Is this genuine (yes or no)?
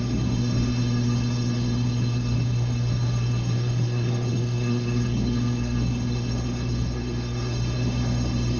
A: no